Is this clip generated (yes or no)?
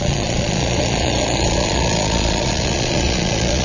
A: yes